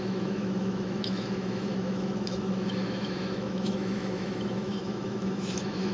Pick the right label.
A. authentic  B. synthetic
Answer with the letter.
B